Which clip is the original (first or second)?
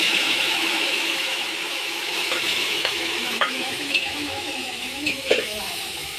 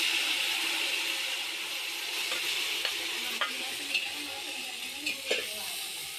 second